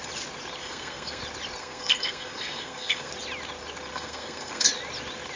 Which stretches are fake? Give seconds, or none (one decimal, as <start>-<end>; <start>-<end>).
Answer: 0.6-1.2; 1.6-3.1; 3.9-4.7